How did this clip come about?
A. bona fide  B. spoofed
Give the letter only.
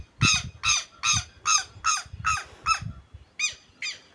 A